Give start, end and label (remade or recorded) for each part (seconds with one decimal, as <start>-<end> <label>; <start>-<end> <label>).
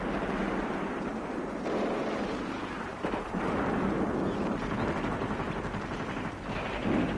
0.0-1.1 recorded; 1.1-3.6 remade; 3.6-7.2 recorded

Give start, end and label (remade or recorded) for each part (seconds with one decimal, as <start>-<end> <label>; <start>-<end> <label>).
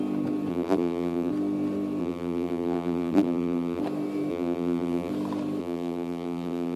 0.0-0.5 recorded; 0.5-1.3 remade; 1.3-2.0 recorded; 2.0-3.8 remade; 3.8-4.3 recorded; 4.3-5.1 remade; 5.1-5.6 recorded; 5.6-6.8 remade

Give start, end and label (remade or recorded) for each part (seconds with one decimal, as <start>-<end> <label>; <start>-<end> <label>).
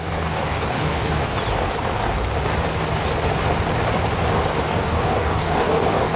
0.0-1.2 remade; 1.2-4.7 recorded; 4.7-6.2 remade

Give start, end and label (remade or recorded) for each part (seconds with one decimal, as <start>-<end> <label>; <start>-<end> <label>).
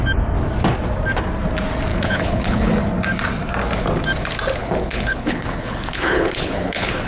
0.0-1.9 recorded; 1.9-2.7 remade; 2.7-4.6 recorded; 4.6-7.1 remade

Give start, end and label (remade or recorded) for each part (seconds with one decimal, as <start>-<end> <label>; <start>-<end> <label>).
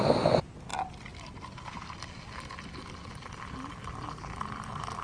0.0-5.0 recorded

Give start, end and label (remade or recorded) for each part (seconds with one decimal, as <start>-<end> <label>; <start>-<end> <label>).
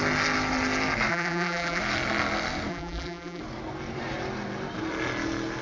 0.0-1.1 recorded; 1.1-1.8 remade; 1.8-2.7 recorded; 2.7-3.4 remade; 3.4-5.6 recorded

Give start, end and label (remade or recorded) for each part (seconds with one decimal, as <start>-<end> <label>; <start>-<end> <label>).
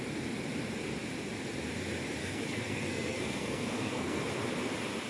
0.0-2.2 recorded; 2.2-4.2 remade; 4.2-5.1 recorded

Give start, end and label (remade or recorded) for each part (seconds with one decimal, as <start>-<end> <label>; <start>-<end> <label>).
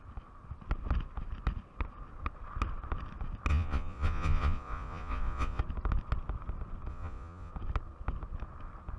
0.0-3.5 recorded; 3.5-5.6 remade; 5.6-6.9 recorded; 6.9-7.5 remade; 7.5-9.0 recorded